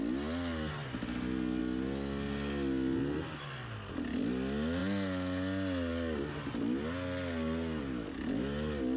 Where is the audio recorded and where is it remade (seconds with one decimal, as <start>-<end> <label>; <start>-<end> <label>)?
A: 0.0-9.0 recorded